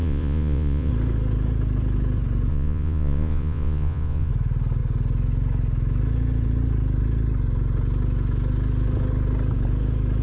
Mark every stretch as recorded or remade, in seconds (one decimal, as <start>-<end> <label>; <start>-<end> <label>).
0.0-0.9 remade; 0.9-2.5 recorded; 2.5-4.3 remade; 4.3-10.2 recorded